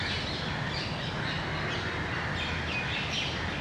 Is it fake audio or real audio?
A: real